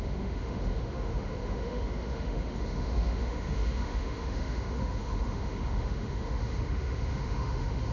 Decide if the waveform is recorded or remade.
remade